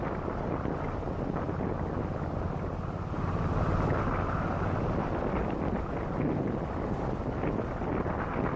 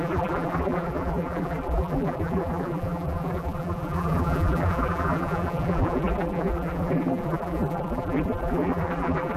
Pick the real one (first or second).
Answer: first